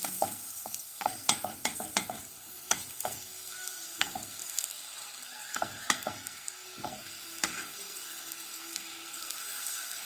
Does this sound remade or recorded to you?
remade